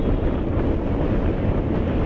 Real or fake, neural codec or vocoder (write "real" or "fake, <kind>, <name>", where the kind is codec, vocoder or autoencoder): real